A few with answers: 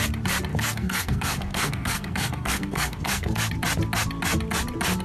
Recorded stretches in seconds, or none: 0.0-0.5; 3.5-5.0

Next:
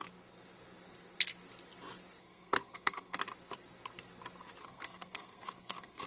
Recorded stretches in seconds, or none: 0.0-2.2; 3.2-4.6

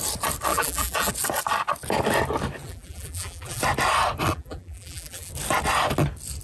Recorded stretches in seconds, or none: 0.0-0.5; 1.1-2.6; 3.6-4.3; 5.3-6.4

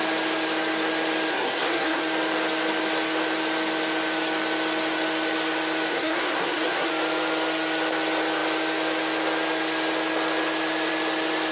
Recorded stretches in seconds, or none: 0.0-1.3; 2.0-5.9; 6.9-11.5

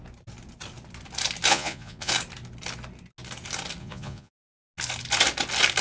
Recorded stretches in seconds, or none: 0.0-1.5; 2.1-3.8; 4.6-5.8

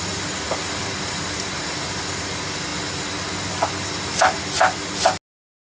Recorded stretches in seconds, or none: 0.0-5.7

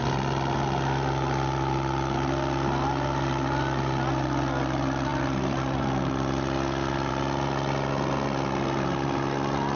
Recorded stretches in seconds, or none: 0.0-9.8

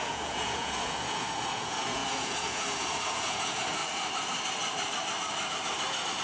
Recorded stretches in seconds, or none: 3.8-6.2